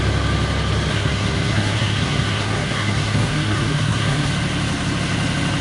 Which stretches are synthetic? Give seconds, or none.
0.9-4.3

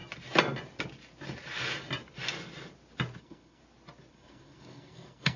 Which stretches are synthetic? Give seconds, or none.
3.2-3.6; 4.1-5.4

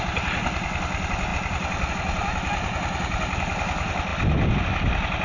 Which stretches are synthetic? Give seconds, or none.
none

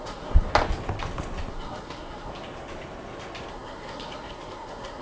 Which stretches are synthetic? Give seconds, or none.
0.0-0.5; 1.5-2.3; 3.5-5.0